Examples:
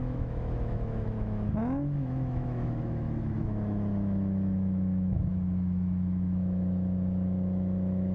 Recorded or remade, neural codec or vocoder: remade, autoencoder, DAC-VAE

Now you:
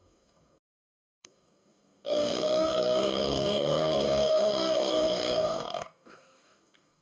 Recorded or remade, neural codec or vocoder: remade, codec, DAC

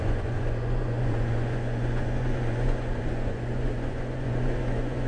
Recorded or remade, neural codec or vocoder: remade, vocoder, Vocos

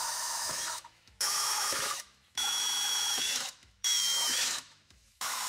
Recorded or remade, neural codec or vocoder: remade, autoencoder, DAC-VAE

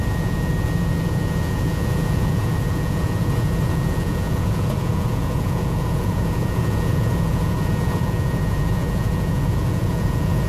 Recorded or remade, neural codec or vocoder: remade, vocoder, Vocos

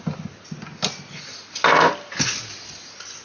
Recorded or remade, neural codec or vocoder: recorded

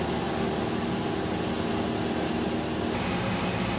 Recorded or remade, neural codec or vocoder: recorded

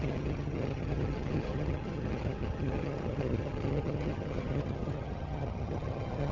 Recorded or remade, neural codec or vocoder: remade, vocoder, HiFi-GAN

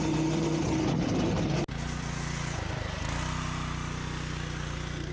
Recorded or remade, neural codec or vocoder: recorded